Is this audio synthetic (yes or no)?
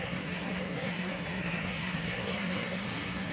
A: yes